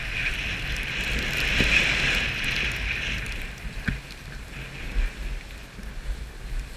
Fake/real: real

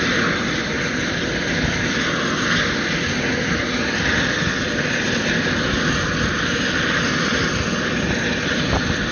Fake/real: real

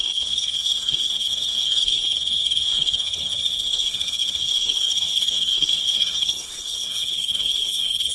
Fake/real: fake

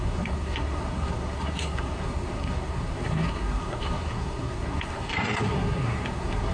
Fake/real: fake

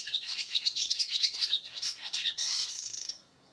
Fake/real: fake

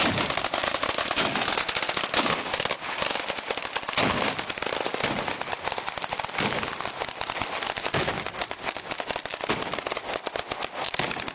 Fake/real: real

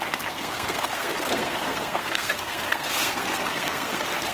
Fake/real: fake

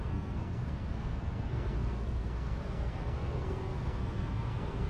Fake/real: fake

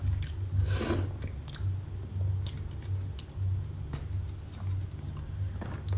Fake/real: real